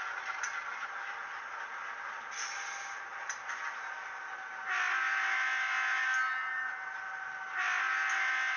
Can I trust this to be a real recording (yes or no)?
yes